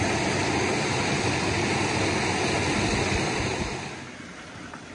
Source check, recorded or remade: recorded